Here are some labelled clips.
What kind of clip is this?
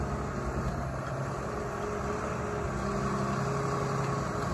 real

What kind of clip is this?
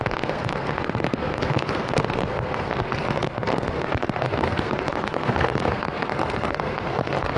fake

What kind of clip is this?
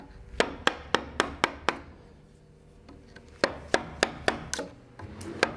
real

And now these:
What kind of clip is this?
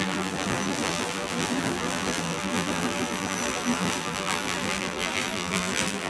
fake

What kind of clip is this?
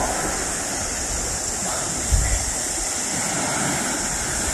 real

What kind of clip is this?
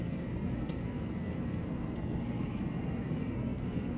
fake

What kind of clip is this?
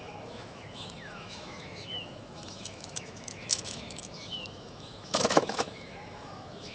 fake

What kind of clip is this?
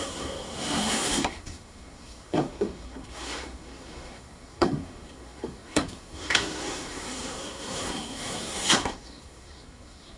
fake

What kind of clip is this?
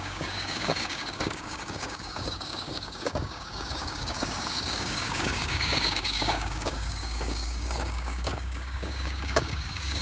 fake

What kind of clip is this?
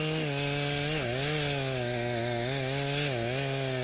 real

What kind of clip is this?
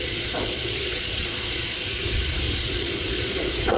fake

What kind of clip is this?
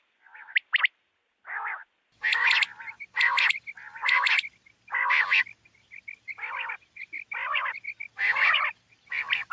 real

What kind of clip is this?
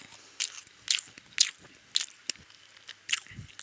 real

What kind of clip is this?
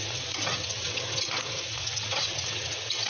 fake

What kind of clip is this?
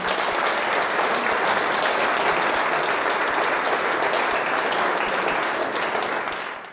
real